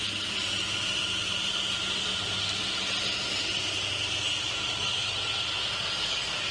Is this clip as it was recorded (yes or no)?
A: yes